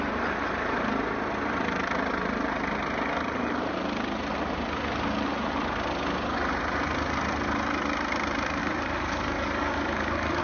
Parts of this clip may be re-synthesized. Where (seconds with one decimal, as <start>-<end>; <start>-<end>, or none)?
8.6-10.4